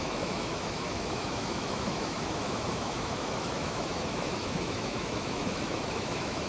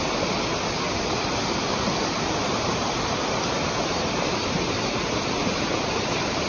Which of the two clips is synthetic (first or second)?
first